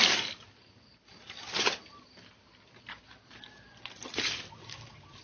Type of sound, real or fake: real